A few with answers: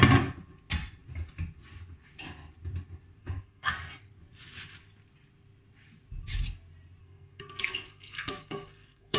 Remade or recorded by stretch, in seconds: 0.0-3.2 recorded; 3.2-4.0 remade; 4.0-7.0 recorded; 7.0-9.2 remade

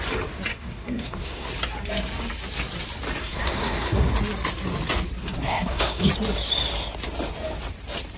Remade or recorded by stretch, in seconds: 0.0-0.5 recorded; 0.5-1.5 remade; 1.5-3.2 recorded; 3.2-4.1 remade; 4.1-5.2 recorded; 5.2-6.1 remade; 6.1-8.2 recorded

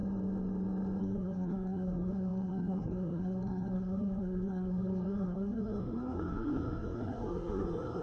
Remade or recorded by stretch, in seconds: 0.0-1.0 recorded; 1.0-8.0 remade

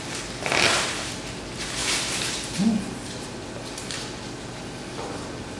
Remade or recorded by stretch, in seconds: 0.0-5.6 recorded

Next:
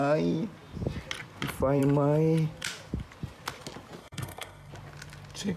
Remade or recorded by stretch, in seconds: 0.0-4.0 recorded; 4.0-4.7 remade; 4.7-5.6 recorded

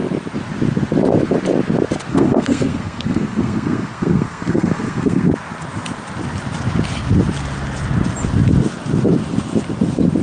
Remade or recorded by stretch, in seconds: 0.0-2.1 recorded; 2.1-5.3 remade; 5.3-10.2 recorded